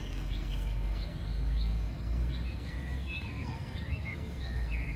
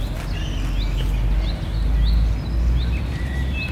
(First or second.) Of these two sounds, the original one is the second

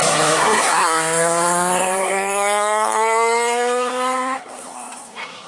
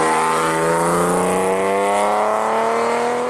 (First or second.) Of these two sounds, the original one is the second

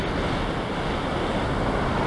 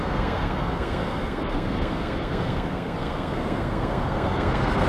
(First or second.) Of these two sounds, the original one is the first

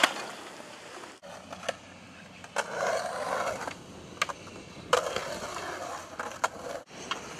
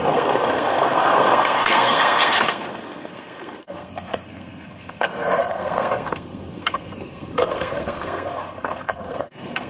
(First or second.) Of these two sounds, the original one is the first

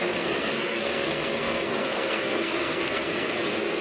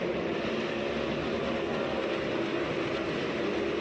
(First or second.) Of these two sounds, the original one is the second